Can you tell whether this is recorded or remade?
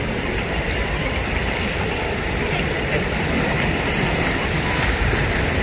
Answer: remade